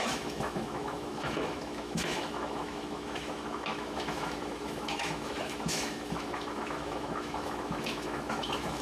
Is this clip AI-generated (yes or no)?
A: yes